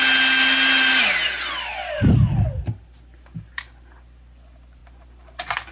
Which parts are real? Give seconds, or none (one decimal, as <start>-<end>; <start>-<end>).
0.0-1.7; 2.3-4.8

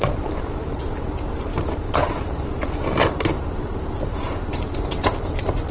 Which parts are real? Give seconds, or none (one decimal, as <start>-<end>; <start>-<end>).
none

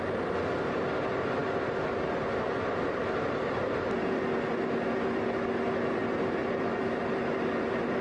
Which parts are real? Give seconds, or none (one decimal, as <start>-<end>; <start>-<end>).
0.0-8.0

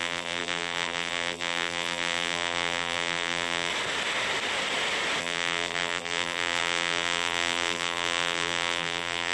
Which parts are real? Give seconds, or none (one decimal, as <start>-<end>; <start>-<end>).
3.7-5.2

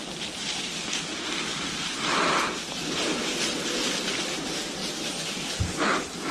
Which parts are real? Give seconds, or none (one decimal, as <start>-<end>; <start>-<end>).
0.0-6.3

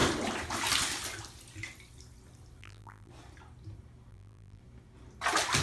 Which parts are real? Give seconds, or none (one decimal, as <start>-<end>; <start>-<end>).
0.0-2.6; 3.1-4.1; 4.6-5.6